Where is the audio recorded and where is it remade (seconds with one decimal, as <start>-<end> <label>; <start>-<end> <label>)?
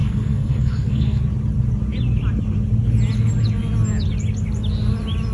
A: 0.0-1.2 remade; 1.2-5.3 recorded